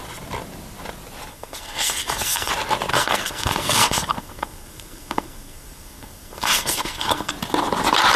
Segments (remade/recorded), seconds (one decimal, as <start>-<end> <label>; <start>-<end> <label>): 0.0-1.3 recorded; 1.3-2.5 remade; 2.5-2.9 recorded; 2.9-7.3 remade; 7.3-8.2 recorded